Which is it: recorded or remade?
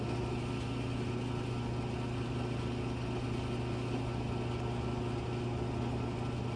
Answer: recorded